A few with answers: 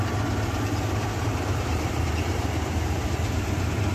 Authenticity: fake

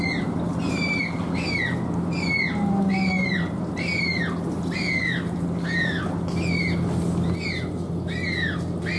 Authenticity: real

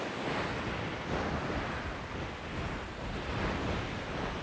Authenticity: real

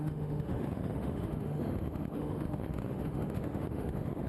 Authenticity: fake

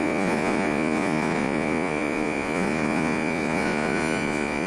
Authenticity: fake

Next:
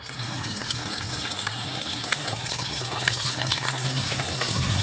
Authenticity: fake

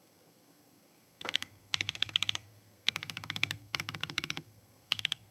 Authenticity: fake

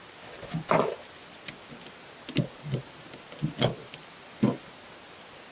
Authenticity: real